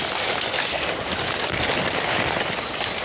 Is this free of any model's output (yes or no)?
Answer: yes